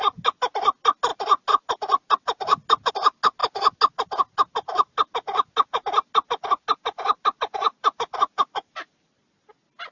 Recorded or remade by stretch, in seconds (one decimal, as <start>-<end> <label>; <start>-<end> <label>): 0.0-9.9 recorded